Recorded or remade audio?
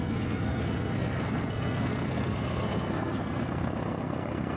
remade